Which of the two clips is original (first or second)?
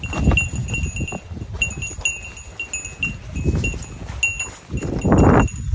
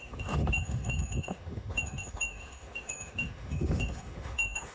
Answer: first